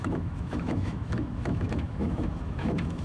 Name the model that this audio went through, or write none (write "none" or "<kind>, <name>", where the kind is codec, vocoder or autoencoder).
autoencoder, DAC-VAE